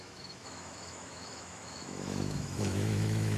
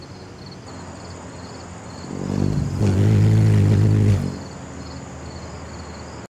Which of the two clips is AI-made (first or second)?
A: first